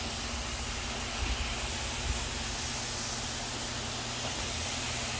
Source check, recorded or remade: recorded